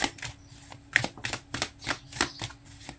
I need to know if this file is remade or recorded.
recorded